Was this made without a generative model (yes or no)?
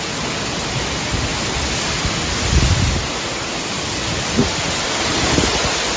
yes